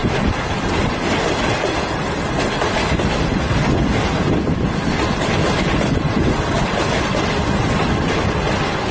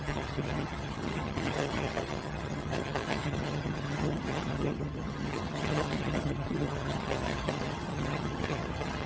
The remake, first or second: second